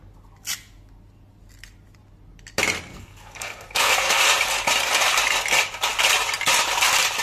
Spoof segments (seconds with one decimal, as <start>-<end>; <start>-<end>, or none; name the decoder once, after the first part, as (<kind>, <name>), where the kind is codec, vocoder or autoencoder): 2.9-4.2 (codec, SNAC)